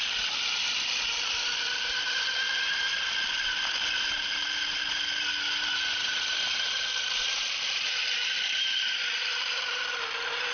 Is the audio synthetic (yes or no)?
no